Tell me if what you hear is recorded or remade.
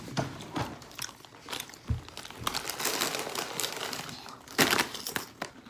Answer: recorded